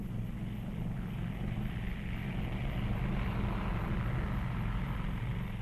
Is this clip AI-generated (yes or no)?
no